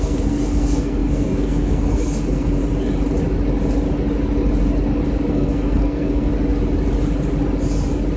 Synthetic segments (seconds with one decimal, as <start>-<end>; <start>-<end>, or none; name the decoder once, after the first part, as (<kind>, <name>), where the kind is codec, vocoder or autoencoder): 0.0-2.6 (codec, SNAC); 5.3-6.3